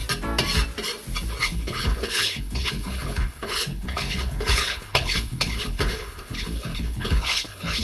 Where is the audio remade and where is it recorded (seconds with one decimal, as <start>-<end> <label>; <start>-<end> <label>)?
0.0-1.4 recorded; 1.4-7.8 remade